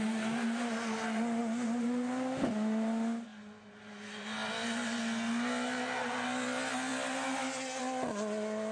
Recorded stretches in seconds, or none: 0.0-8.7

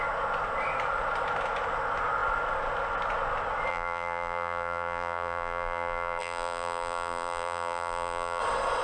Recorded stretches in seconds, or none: 0.0-3.7; 8.4-8.8

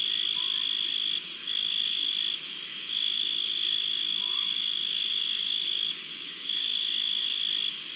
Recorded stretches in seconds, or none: 0.0-1.4; 2.1-2.7; 7.4-8.0

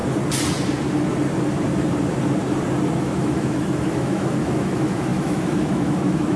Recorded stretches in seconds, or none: 0.0-3.0

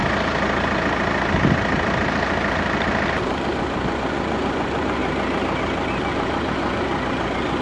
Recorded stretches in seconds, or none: 0.0-3.2; 5.0-5.9

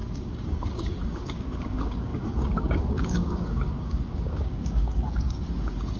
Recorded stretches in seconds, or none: none

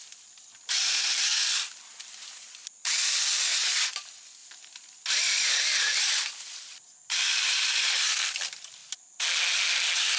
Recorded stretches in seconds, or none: 0.0-10.2